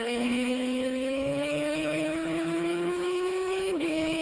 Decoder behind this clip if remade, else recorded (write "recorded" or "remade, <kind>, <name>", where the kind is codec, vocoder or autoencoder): remade, codec, HILCodec